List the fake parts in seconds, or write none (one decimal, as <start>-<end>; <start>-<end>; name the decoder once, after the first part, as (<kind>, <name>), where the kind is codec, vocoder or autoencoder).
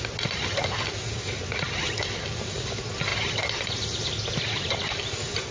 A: none